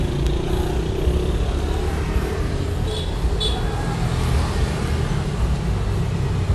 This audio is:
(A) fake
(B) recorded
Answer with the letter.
B